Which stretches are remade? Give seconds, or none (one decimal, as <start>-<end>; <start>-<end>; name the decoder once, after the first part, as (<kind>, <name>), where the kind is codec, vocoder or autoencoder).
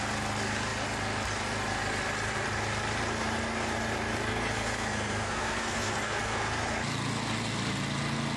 4.3-6.5 (codec, SNAC)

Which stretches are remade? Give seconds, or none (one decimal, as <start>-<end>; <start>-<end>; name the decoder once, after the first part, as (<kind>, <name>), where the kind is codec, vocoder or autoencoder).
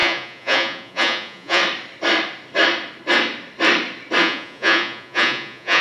0.0-1.6 (vocoder, Vocos); 4.2-5.8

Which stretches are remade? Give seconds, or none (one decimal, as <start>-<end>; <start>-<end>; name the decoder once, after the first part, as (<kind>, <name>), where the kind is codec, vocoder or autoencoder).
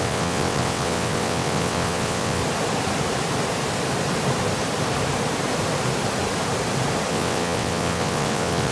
0.0-2.4 (vocoder, WaveNeXt); 7.1-8.7